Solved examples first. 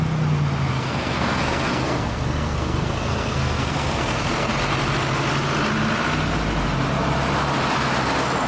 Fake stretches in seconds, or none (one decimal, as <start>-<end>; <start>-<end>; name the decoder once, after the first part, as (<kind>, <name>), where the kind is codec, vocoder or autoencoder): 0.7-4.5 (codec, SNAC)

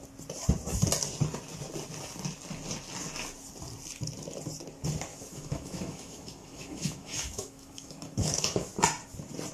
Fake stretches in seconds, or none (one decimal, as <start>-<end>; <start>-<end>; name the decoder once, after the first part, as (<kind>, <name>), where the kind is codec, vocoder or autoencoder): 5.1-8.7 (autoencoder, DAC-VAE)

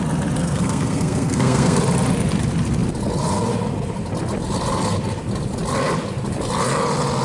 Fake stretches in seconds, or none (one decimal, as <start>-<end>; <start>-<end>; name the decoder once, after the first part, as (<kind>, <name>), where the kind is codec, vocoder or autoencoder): 0.4-1.8 (codec, SNAC)